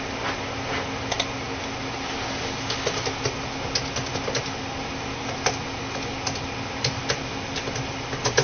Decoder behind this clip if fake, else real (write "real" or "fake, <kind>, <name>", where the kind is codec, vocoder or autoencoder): real